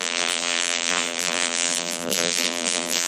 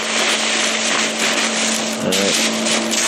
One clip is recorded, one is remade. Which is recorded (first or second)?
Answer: second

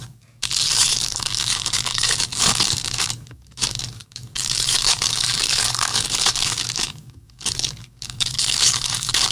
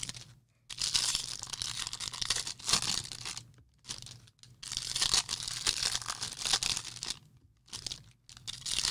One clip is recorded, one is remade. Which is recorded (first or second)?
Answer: second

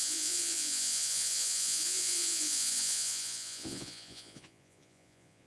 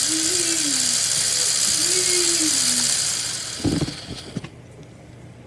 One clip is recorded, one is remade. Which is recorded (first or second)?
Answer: second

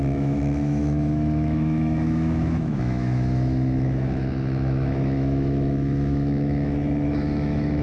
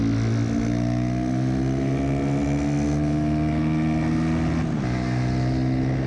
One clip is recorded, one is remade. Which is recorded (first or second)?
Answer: second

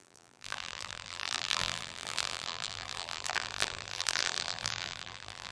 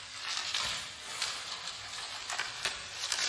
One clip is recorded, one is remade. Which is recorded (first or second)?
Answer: second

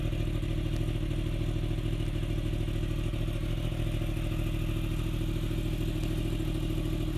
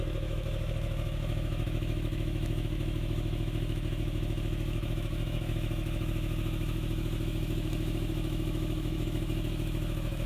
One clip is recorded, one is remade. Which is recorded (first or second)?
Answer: first